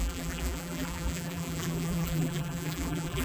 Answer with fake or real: fake